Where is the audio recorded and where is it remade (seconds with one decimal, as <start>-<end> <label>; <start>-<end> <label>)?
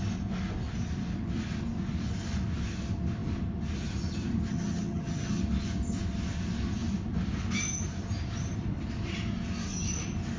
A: 0.0-4.5 recorded; 4.5-5.4 remade; 5.4-10.4 recorded